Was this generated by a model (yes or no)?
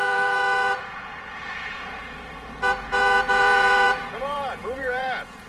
yes